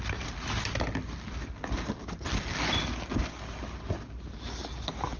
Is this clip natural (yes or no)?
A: yes